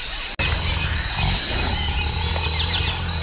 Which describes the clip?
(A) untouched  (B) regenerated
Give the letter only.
A